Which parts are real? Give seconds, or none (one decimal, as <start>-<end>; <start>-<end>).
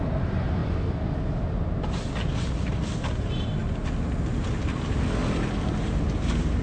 0.6-3.0; 3.6-4.3; 5.2-6.0